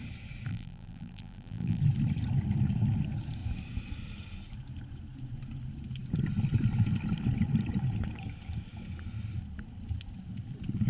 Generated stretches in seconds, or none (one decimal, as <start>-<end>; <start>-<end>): 0.5-1.8